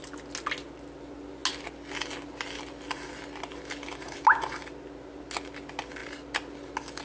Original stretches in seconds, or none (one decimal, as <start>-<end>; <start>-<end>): 0.0-7.0